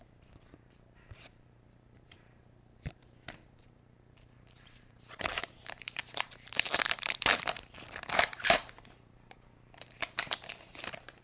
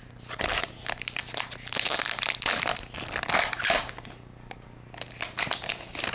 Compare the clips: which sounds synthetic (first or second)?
first